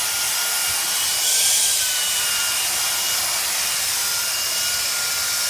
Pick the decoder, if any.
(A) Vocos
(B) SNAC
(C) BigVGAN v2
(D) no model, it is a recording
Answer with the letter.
D